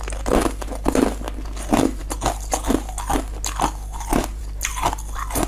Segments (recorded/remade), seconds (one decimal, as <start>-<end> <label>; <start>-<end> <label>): 0.0-5.5 recorded